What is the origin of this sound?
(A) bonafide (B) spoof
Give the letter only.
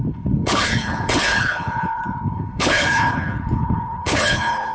B